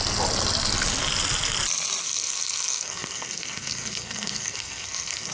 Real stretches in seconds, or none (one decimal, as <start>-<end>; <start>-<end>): 0.0-2.0